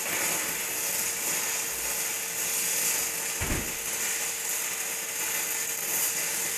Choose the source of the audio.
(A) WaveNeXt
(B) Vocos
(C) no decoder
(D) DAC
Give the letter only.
C